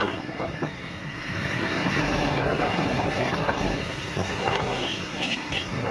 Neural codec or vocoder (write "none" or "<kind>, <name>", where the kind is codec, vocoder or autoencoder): codec, SNAC